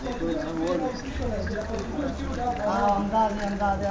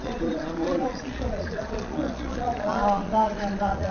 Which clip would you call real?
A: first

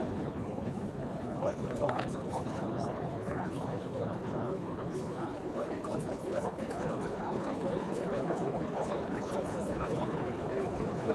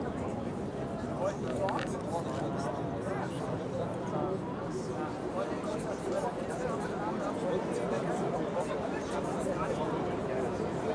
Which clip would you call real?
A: second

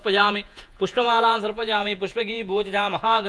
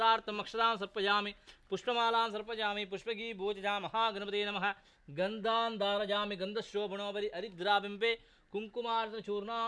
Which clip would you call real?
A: second